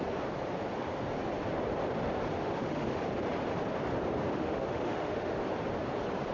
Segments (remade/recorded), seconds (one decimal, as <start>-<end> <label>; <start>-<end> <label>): 0.0-2.4 recorded; 2.4-3.0 remade; 3.0-4.3 recorded; 4.3-5.4 remade; 5.4-6.3 recorded